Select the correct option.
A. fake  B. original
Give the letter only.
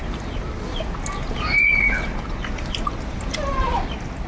B